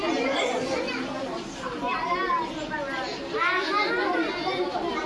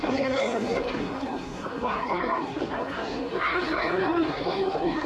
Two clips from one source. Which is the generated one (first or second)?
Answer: second